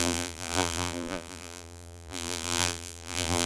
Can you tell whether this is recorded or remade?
remade